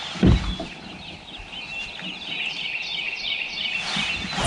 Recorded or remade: recorded